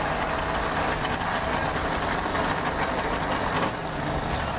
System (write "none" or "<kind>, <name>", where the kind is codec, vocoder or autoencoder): none